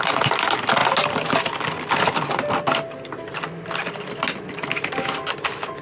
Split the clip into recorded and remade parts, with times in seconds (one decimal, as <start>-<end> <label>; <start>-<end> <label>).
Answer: 0.0-5.8 recorded